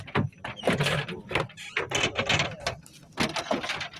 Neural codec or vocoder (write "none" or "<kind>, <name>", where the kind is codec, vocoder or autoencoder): none